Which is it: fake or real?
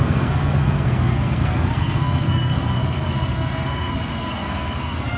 fake